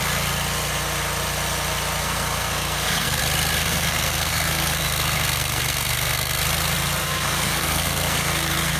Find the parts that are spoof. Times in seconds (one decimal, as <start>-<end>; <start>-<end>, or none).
2.0-3.2; 3.6-6.4; 7.0-8.8